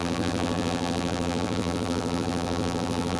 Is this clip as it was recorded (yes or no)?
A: no